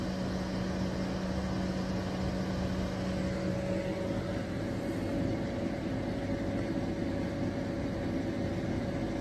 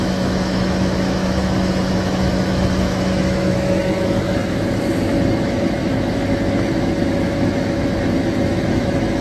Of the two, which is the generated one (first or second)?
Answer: second